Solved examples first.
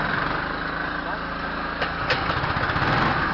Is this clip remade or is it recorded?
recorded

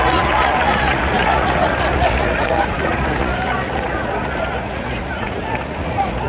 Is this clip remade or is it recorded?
remade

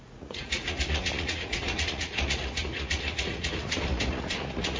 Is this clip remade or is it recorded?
remade